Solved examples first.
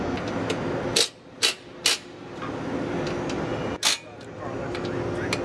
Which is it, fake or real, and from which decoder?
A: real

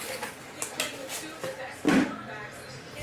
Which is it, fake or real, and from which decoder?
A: real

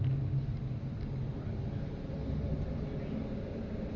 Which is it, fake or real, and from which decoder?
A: real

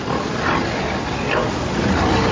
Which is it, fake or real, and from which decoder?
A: real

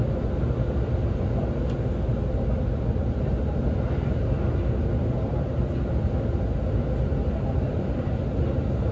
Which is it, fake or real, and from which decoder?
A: real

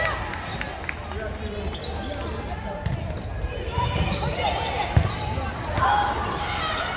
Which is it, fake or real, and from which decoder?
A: real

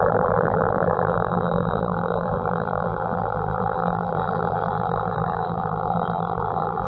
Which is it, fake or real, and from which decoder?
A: fake, vocoder, BigVGAN v2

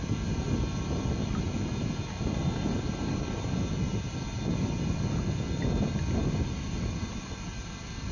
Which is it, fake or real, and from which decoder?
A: real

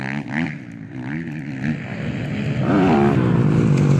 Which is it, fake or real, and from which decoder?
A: real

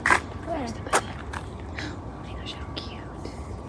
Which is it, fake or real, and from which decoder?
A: real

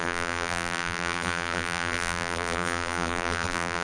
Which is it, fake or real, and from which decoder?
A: fake, vocoder, BigVGAN v2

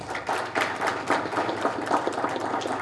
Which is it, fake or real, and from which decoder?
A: real